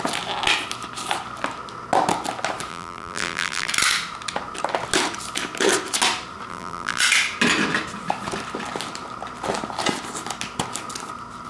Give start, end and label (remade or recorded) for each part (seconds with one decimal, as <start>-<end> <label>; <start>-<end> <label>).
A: 0.0-2.7 recorded; 2.7-3.7 remade; 3.7-6.5 recorded; 6.5-7.0 remade; 7.0-11.5 recorded